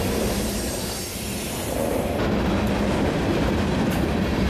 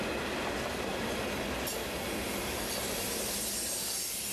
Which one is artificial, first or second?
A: first